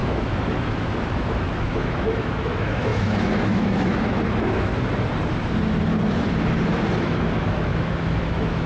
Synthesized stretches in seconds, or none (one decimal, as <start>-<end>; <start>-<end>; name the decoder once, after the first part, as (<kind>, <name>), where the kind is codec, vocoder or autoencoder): 0.0-4.7 (autoencoder, DAC-VAE); 6.9-8.7